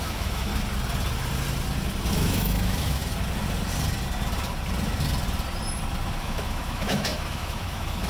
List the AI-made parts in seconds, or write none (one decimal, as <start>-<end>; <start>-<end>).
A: 0.0-0.5; 2.1-3.0; 6.1-8.1